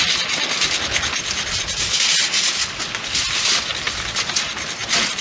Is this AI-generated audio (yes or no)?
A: no